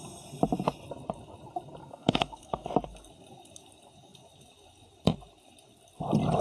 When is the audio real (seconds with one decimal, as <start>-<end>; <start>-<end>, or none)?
0.0-1.8; 2.7-6.4